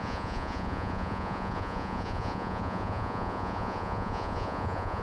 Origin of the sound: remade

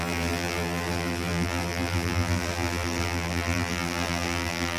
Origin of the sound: remade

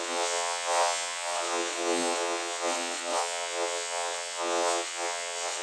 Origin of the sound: remade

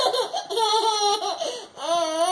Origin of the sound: recorded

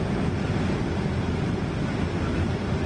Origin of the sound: recorded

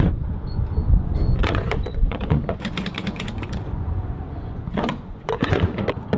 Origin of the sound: remade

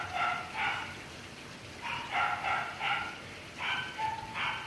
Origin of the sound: recorded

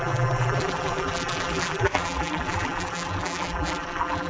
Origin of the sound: remade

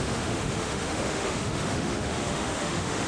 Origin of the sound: remade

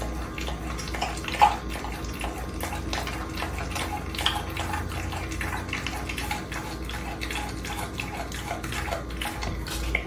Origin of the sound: recorded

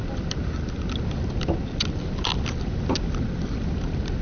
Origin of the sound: recorded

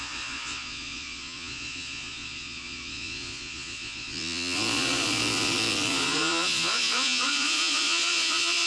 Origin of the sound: remade